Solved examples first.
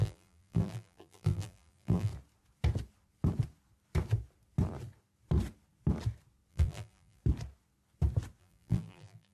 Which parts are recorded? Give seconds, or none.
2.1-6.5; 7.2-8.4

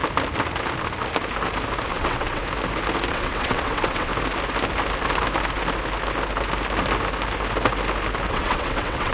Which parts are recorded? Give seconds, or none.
0.0-1.9; 2.4-3.1; 4.1-8.3

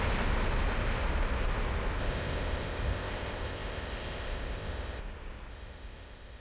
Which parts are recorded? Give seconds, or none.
0.0-2.0; 5.0-5.5

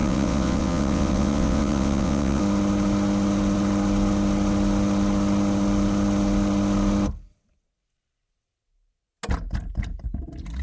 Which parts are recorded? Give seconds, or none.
2.4-10.6